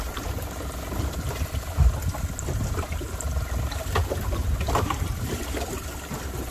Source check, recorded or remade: recorded